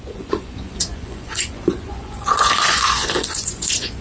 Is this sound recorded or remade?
remade